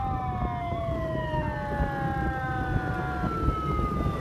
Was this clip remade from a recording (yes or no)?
no